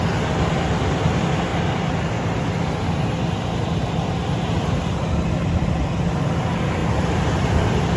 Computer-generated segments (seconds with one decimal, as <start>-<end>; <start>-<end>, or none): none